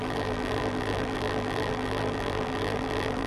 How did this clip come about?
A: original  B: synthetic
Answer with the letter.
B